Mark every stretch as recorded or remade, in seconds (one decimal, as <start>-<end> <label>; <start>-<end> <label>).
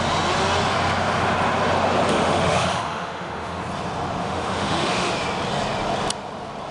0.0-2.1 recorded; 2.1-3.6 remade; 3.6-4.2 recorded; 4.2-5.1 remade; 5.1-6.7 recorded